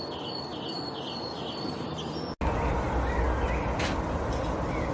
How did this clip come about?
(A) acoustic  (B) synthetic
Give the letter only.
A